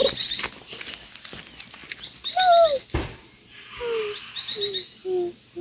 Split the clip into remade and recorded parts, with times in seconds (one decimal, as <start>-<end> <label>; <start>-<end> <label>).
0.0-5.6 recorded